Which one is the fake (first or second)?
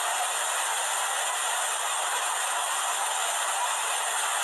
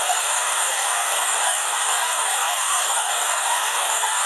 second